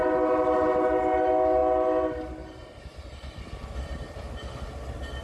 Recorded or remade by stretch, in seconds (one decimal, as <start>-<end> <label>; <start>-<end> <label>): 0.0-5.2 recorded